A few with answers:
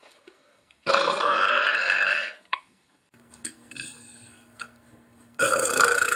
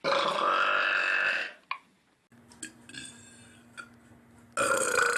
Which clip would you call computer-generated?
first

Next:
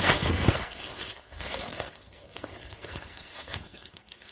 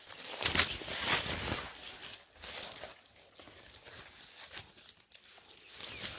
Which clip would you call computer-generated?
first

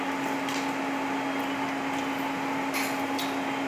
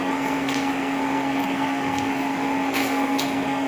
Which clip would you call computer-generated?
second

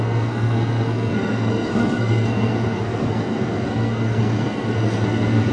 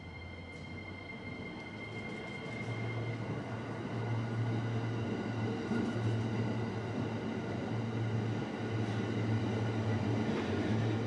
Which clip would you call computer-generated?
first